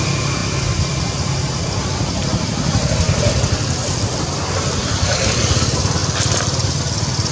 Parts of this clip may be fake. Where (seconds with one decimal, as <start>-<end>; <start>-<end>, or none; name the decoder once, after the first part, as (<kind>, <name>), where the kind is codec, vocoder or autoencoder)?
none